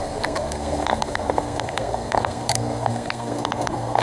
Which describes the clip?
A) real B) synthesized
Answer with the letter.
B